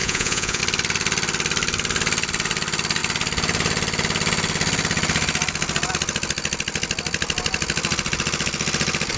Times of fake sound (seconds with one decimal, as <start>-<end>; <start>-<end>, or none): 0.0-0.6